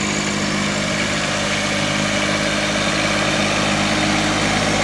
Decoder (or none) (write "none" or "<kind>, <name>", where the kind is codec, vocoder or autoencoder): none